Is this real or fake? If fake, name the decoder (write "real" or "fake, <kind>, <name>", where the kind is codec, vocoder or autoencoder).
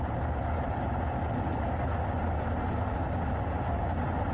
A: real